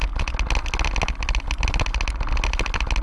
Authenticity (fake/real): real